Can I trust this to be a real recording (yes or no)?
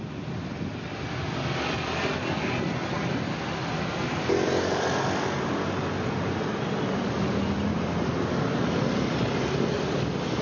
yes